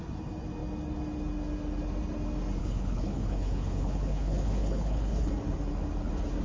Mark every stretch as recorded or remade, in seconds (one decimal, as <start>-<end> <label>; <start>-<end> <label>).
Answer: 0.0-2.6 recorded; 2.6-5.3 remade; 5.3-6.4 recorded